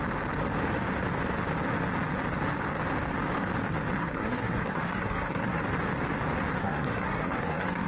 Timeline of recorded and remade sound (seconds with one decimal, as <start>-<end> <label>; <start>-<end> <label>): 0.0-4.0 recorded; 4.0-5.6 remade; 5.6-6.6 recorded; 6.6-7.9 remade